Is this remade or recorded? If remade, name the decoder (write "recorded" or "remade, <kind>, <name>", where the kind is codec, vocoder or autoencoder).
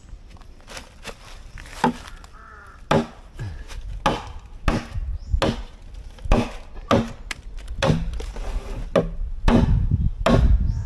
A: recorded